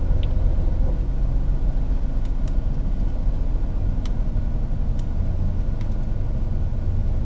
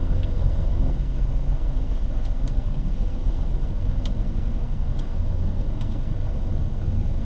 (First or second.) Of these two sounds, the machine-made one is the second